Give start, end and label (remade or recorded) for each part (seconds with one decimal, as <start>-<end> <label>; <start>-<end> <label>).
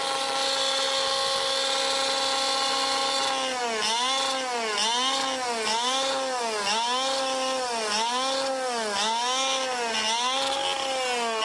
0.0-11.4 recorded